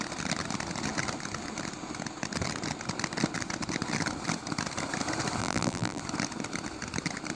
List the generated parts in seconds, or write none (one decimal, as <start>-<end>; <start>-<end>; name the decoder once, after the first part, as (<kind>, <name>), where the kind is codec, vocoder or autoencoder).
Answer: 5.4-6.0 (vocoder, BigVGAN v2)